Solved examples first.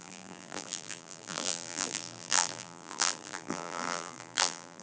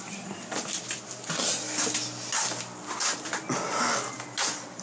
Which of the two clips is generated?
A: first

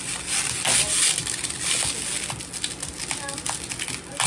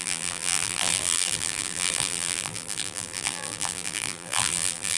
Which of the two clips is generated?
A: second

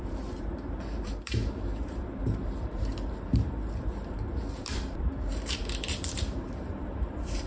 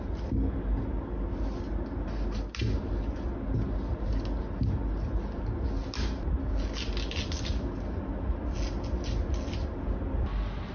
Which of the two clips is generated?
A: first